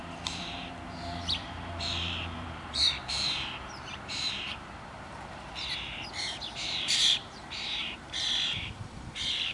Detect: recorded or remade remade